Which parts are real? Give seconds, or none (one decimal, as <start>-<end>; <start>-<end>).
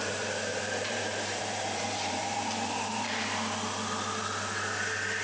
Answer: 0.0-0.5; 3.1-5.2